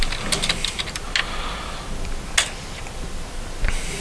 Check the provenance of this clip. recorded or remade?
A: recorded